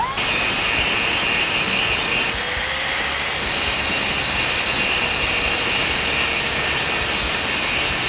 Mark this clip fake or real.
real